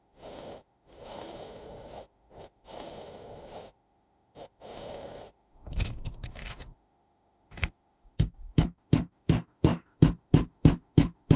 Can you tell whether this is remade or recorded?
remade